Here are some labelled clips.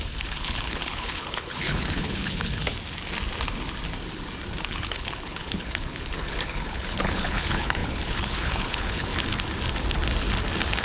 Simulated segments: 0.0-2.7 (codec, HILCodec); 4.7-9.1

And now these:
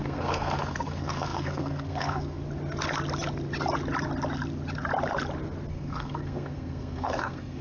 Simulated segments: 0.0-2.4 (codec, SNAC); 5.7-7.6

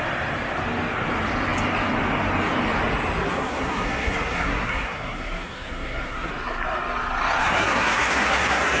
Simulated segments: 3.3-6.3 (codec, SNAC); 7.4-8.8